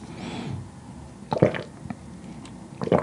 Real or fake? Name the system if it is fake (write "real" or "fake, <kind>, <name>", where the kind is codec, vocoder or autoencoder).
real